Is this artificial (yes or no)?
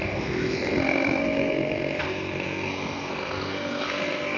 yes